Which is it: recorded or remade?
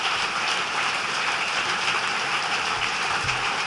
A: remade